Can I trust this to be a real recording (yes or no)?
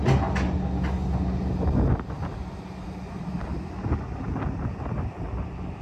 yes